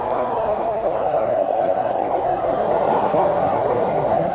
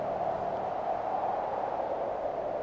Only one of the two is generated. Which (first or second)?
first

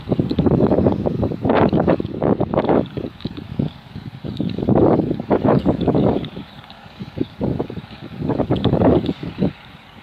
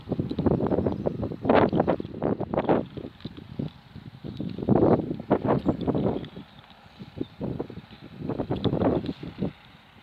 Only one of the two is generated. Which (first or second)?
first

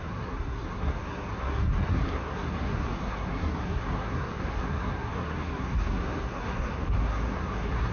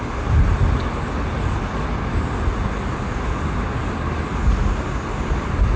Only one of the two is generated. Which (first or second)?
first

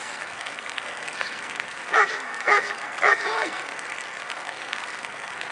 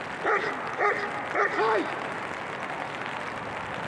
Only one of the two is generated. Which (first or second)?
first